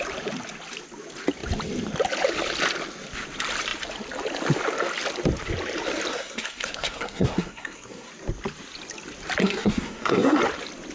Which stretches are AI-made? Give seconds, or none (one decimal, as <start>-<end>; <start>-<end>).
6.1-8.1; 9.4-10.4